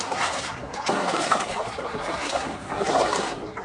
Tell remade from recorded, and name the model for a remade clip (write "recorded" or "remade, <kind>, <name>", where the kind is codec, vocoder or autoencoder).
remade, codec, SNAC